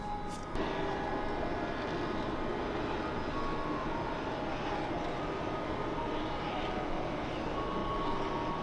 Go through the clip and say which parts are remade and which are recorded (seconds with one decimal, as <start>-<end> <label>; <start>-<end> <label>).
0.0-8.6 recorded